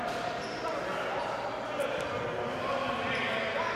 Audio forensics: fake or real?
real